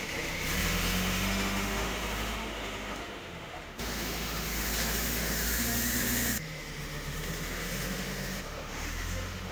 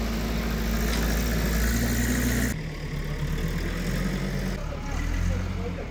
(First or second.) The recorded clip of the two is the second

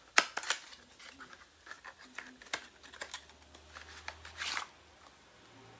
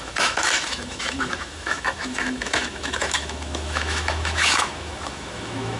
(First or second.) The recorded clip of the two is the first